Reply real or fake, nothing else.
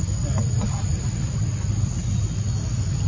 real